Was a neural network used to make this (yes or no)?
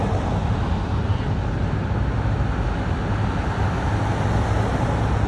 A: no